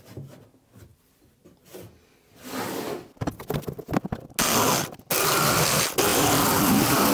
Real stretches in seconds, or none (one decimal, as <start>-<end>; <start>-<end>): 0.0-0.9; 3.6-6.1